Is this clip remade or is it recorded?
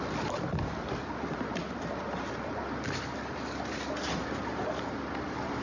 recorded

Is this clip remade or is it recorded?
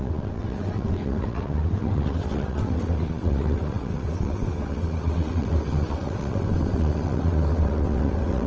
remade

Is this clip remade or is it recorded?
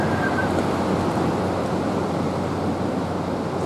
recorded